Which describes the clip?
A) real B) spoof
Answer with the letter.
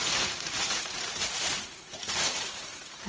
B